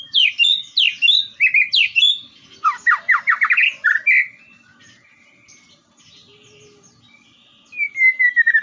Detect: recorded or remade recorded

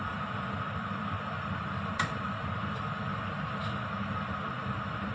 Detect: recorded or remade recorded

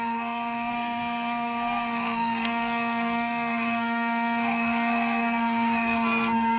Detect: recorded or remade remade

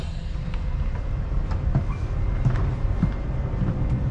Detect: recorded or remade recorded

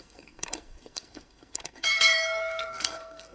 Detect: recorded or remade remade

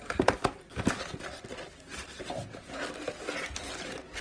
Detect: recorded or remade recorded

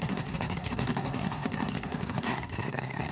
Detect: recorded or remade remade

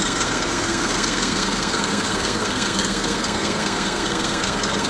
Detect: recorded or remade remade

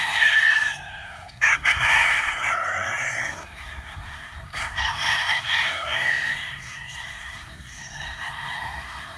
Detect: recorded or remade remade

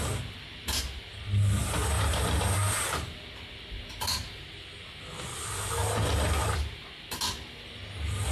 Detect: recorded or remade recorded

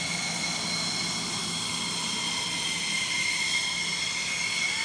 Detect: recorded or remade recorded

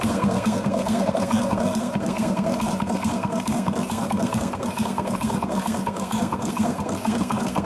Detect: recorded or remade remade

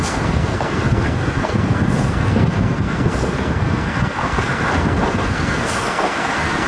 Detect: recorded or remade remade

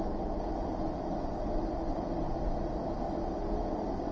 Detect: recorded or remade recorded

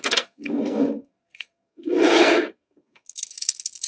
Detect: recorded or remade remade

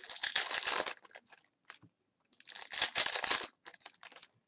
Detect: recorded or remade recorded